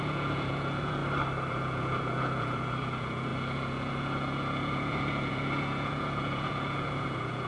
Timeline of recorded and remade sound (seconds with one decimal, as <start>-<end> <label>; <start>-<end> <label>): 0.0-1.0 remade; 1.0-1.5 recorded; 1.5-7.5 remade